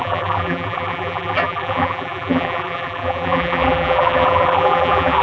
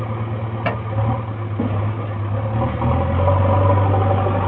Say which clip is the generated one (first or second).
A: first